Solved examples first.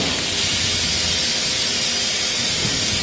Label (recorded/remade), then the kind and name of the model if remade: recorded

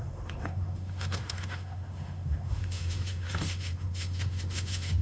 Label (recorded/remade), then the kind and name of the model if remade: remade, autoencoder, DAC-VAE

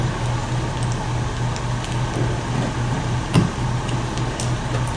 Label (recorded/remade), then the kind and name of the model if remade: recorded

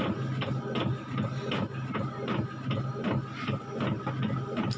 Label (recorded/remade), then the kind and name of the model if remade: recorded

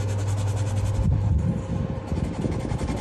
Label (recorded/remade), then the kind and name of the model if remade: recorded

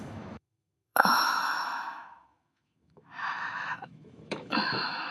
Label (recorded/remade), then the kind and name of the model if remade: remade, autoencoder, DAC-VAE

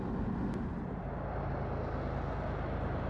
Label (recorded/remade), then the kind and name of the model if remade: recorded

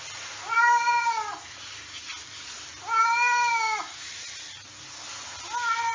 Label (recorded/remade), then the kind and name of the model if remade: recorded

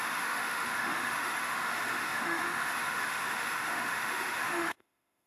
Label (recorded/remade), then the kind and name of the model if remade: remade, autoencoder, DAC-VAE